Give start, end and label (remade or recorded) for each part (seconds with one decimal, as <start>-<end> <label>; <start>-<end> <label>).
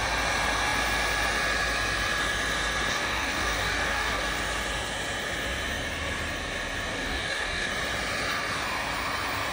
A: 0.0-2.9 recorded; 2.9-4.2 remade; 4.2-6.9 recorded; 6.9-7.7 remade; 7.7-9.5 recorded